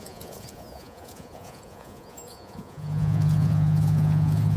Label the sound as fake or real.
fake